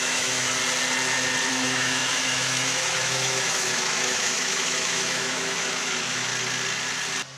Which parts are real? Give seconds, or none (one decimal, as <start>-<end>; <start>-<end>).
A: 0.6-1.5; 6.3-7.4

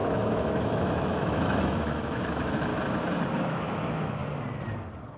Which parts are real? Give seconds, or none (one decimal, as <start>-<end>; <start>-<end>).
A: 2.7-3.4; 4.2-5.2

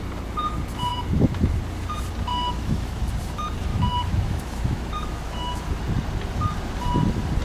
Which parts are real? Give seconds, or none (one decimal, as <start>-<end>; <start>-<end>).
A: 0.0-0.9; 1.5-2.3; 3.0-3.7; 5.7-7.4

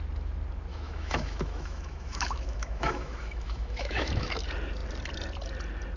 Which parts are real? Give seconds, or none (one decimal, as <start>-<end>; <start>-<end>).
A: 0.0-0.7; 4.3-6.0